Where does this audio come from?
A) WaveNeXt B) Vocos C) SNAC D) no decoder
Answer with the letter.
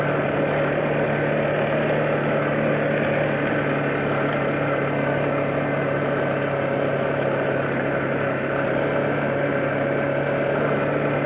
D